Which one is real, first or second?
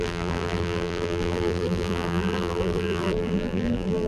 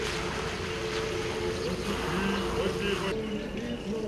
second